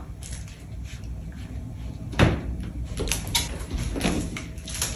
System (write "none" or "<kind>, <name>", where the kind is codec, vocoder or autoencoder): none